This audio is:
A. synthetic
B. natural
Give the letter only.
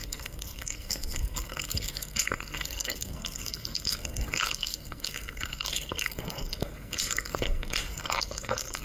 A